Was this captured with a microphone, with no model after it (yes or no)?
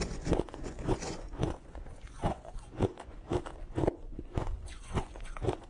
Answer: no